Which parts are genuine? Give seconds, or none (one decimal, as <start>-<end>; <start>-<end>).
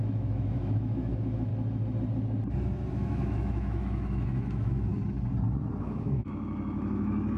1.5-2.9; 4.9-5.8